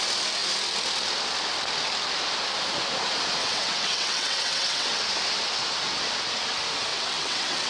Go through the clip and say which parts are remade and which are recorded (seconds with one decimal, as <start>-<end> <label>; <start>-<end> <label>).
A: 0.0-3.4 recorded; 3.4-5.0 remade; 5.0-6.9 recorded; 6.9-7.7 remade